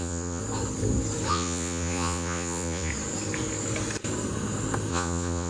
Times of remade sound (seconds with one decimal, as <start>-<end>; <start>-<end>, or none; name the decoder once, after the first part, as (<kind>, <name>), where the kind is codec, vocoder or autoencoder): 0.0-0.4 (vocoder, Vocos); 1.3-2.9; 4.9-5.5